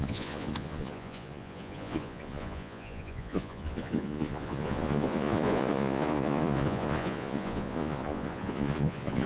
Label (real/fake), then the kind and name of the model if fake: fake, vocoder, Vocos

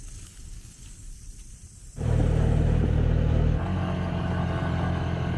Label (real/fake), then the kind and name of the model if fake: real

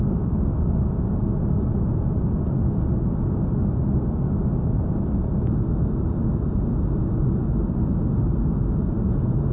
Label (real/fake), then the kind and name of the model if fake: real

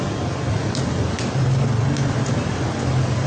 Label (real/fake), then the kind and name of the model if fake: real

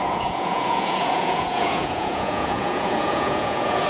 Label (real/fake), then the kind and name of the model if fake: fake, vocoder, Vocos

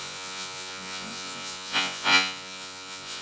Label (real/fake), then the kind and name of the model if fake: fake, vocoder, Vocos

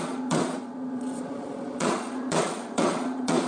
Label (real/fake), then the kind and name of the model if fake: fake, vocoder, Vocos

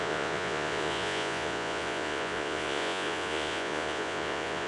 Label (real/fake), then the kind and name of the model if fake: fake, vocoder, Vocos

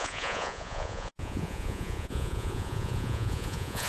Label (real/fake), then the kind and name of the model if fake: fake, vocoder, Vocos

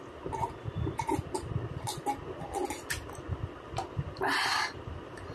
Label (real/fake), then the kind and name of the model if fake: real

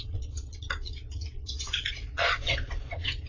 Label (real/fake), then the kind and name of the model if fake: fake, vocoder, Vocos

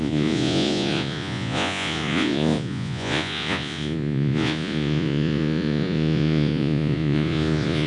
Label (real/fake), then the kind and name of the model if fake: fake, vocoder, Vocos